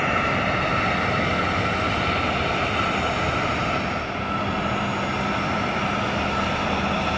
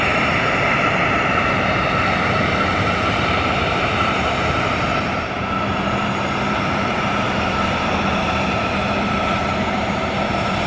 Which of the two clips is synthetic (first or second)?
second